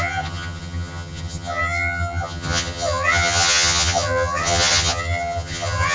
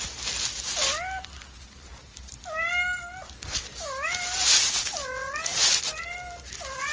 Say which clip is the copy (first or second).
first